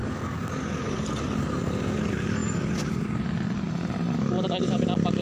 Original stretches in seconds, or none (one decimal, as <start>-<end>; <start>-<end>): 0.0-5.2